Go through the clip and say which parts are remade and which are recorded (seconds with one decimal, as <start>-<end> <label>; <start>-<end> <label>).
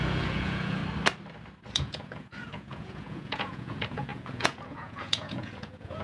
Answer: 0.0-0.8 remade; 0.8-1.7 recorded; 1.7-6.0 remade